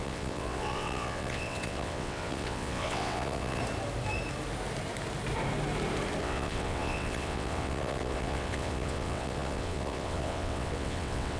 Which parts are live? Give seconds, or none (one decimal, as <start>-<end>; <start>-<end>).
3.6-6.2